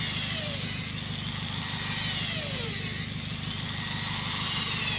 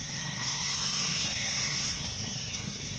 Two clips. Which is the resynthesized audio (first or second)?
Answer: second